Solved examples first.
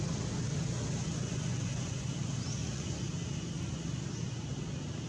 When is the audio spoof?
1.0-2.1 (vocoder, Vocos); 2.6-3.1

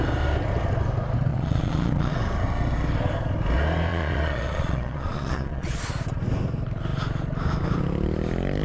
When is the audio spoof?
1.3-2.1 (vocoder, Vocos); 3.9-5.8

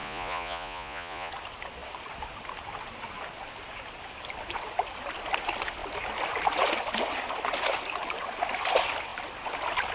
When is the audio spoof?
0.0-1.3 (vocoder, Vocos)